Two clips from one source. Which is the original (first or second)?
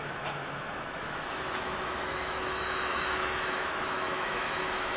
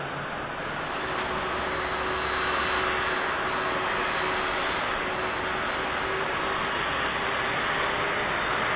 second